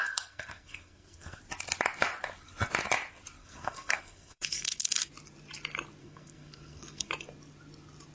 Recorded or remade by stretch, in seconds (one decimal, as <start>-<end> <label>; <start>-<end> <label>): 0.0-1.4 remade; 1.4-3.4 recorded; 3.4-5.1 remade; 5.1-6.0 recorded; 6.0-7.1 remade; 7.1-8.1 recorded